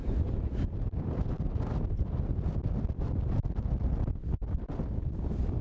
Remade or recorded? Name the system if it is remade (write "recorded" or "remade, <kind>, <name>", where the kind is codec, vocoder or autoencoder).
remade, vocoder, BigVGAN v2